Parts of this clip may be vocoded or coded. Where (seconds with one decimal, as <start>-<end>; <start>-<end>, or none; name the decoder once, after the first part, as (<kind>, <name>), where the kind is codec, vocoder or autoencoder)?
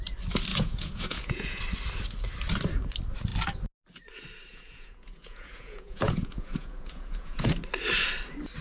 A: 0.5-1.6 (vocoder, Vocos); 4.5-7.5